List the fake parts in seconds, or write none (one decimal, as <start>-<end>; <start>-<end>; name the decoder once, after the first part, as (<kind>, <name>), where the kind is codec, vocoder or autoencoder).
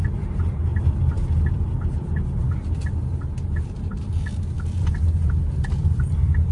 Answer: none